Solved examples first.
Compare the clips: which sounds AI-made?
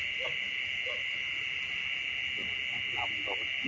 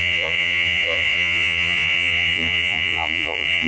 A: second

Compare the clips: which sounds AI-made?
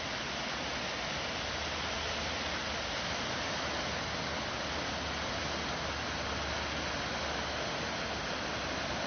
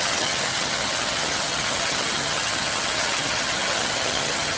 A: second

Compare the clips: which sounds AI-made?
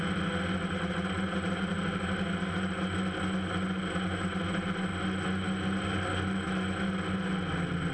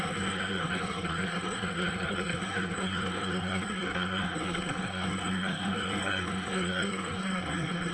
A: second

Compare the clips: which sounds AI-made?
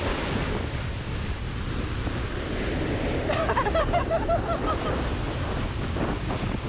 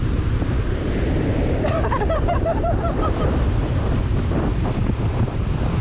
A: second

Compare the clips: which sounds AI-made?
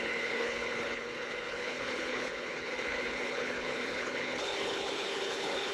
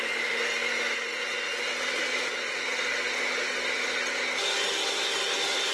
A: first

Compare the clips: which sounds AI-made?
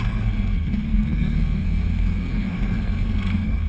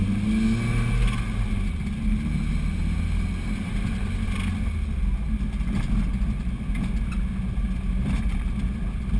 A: first